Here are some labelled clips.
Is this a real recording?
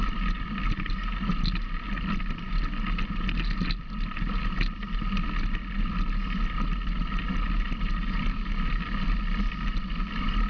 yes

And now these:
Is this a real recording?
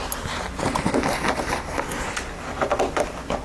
yes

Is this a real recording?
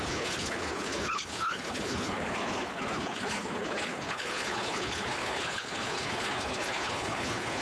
no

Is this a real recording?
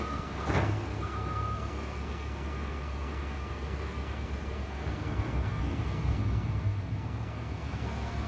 no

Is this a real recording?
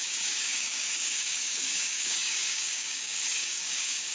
no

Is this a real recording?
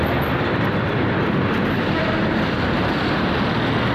yes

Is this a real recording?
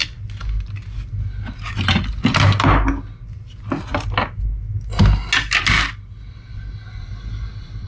yes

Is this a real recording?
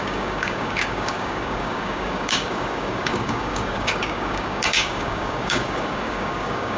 no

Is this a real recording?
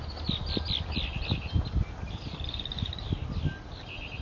yes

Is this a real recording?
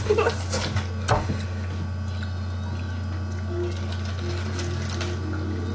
yes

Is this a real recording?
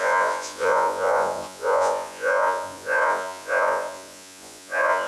no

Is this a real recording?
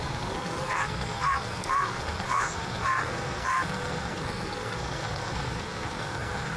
no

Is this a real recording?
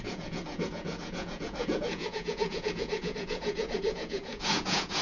no